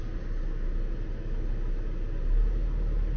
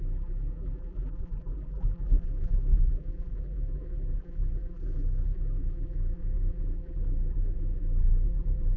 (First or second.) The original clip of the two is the first